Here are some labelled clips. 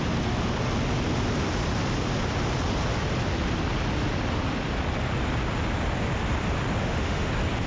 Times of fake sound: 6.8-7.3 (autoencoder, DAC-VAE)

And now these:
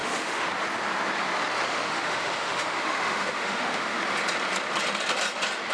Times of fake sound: 0.0-0.5 (autoencoder, DAC-VAE); 1.7-4.0

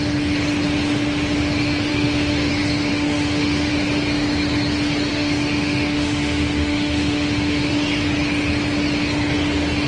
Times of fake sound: 1.9-2.5 (autoencoder, DAC-VAE); 2.9-3.7; 5.1-7.7